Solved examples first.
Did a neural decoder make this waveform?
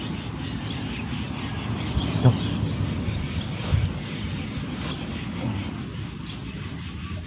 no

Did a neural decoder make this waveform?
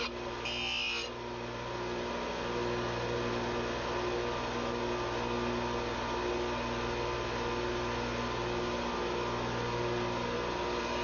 no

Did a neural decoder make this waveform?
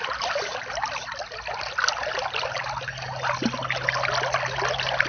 no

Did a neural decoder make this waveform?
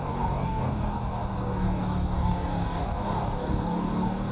yes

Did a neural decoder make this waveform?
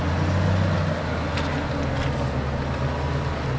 no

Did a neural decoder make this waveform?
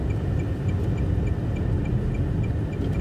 no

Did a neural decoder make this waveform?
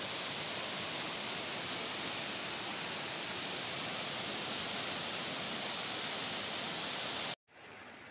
no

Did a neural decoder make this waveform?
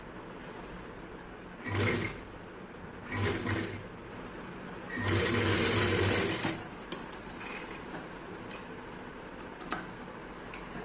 no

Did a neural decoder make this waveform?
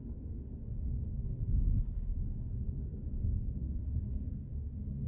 yes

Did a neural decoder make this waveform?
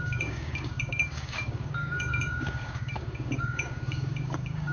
yes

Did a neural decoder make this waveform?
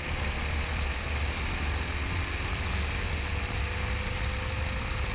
no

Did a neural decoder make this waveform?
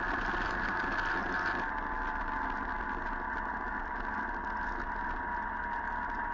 no